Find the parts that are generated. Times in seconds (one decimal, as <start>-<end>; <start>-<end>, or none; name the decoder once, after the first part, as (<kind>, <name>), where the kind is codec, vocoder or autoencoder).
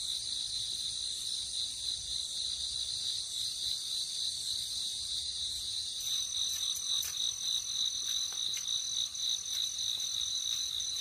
4.9-6.3 (vocoder, BigVGAN v2)